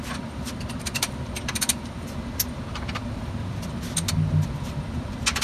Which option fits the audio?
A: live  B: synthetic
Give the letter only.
A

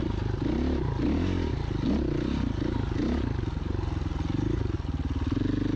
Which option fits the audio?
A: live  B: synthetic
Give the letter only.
A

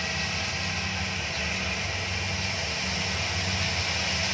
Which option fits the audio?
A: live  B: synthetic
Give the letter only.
A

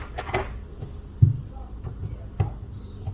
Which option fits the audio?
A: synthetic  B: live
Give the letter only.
B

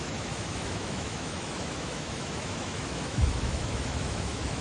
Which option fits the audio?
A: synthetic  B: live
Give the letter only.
A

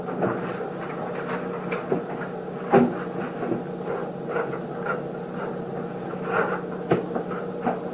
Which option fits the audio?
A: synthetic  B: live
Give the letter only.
B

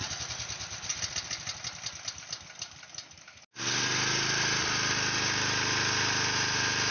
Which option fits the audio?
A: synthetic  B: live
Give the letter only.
B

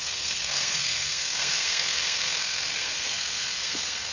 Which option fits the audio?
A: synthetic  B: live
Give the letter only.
A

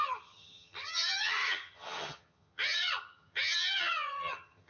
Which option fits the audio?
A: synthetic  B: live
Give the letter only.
A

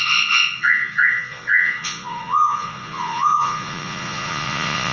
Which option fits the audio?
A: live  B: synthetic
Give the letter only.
B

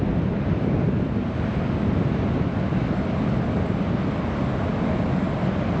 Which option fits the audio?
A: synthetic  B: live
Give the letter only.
B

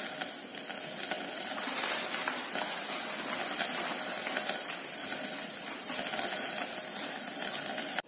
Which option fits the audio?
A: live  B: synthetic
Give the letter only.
A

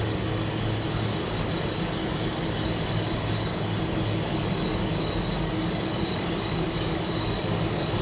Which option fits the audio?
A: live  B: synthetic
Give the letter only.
B